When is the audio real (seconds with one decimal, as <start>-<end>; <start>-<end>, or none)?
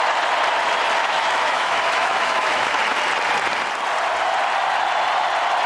0.0-1.0; 2.8-5.7